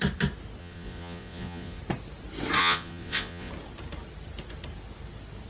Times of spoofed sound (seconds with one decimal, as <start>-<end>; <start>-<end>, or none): 0.6-1.8; 2.6-3.5